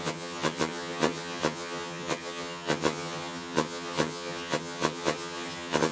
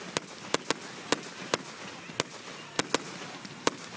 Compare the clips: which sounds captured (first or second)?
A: second